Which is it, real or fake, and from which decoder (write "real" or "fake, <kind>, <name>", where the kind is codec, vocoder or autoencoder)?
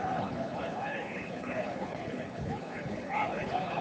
fake, codec, HILCodec